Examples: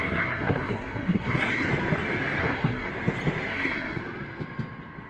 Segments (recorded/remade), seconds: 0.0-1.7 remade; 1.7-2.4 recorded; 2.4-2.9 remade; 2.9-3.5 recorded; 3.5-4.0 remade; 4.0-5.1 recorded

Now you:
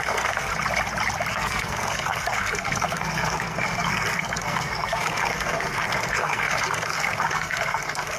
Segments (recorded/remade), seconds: 0.0-0.5 remade; 0.5-1.3 recorded; 1.3-8.2 remade